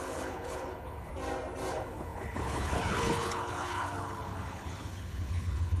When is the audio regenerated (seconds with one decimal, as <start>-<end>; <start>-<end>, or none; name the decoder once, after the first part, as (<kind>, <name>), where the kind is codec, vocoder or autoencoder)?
0.0-1.1 (codec, HILCodec); 1.7-5.8